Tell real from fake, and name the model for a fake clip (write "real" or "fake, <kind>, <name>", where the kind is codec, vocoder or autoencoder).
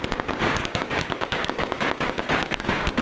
fake, codec, DAC